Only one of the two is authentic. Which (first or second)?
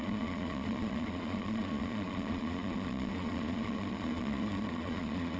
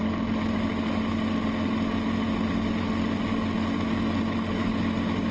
second